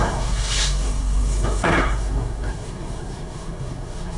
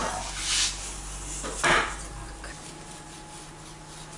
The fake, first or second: first